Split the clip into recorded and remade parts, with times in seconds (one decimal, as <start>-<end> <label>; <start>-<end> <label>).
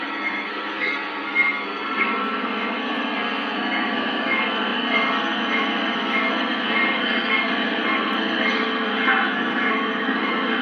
0.0-10.6 remade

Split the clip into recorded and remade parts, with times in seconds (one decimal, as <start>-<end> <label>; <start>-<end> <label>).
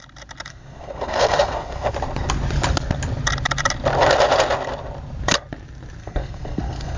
0.0-0.5 recorded; 0.5-1.9 remade; 1.9-6.0 recorded; 6.0-7.0 remade